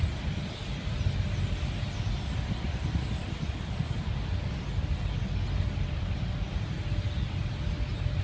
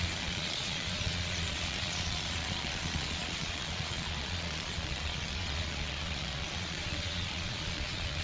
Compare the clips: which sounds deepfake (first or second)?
second